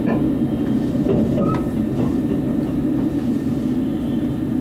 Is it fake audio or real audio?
real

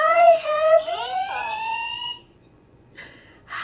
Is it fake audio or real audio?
fake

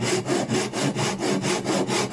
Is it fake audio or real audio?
real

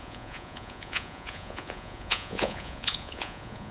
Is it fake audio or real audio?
fake